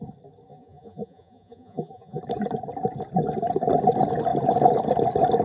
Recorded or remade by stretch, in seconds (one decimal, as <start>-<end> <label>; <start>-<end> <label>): 0.0-0.5 recorded; 0.5-2.2 remade; 2.2-5.4 recorded